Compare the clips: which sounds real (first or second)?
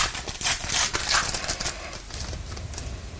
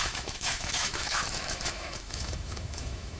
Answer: first